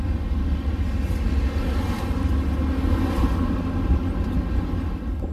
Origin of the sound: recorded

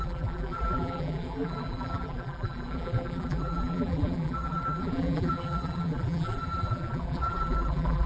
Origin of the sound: remade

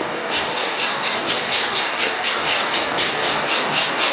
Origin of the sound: remade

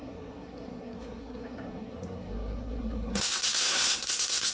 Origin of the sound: remade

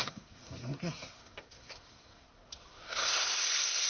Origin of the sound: remade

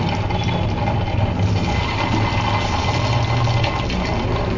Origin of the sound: recorded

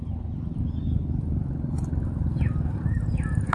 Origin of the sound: recorded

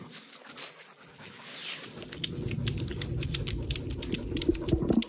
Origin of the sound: recorded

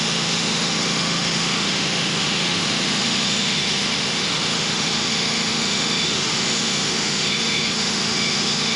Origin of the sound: remade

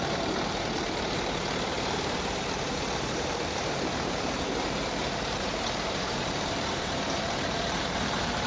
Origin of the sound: remade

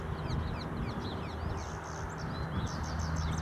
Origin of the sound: recorded